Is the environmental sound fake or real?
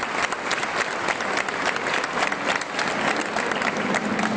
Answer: real